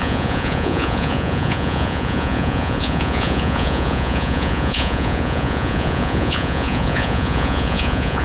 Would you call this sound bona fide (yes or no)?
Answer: no